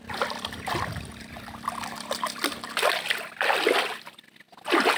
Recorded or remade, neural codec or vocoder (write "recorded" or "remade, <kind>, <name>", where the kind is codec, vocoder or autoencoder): recorded